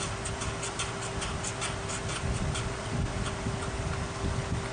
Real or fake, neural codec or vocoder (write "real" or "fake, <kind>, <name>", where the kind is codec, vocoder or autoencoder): real